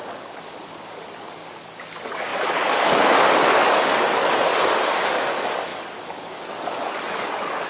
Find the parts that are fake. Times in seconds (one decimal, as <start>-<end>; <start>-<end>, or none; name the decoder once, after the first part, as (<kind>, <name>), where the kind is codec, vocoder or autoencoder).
0.0-7.7 (codec, DAC)